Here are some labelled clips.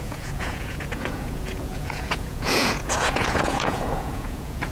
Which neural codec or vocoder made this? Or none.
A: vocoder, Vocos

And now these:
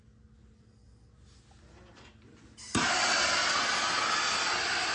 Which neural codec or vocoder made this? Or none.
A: none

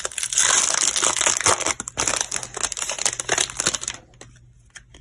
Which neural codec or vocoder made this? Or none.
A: none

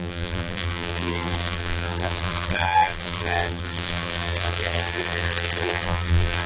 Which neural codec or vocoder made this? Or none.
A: vocoder, BigVGAN v2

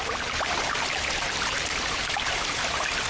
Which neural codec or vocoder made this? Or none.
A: none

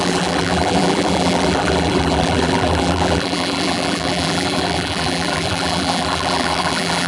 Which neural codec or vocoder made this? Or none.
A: vocoder, BigVGAN v2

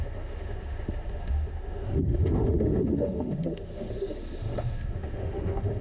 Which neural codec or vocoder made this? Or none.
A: autoencoder, DAC-VAE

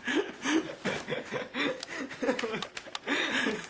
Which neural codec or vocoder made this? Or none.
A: none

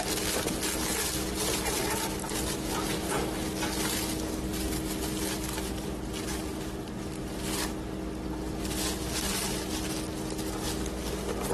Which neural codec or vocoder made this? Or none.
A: none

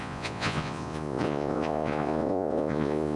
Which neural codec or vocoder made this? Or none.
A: vocoder, Vocos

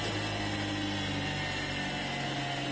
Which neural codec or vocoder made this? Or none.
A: none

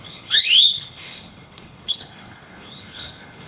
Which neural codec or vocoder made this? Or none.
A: codec, HILCodec